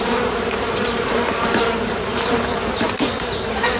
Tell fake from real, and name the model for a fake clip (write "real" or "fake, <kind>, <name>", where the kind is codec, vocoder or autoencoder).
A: fake, vocoder, BigVGAN v2